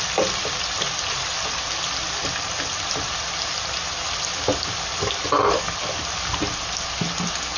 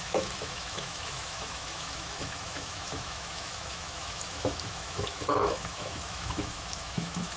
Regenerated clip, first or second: second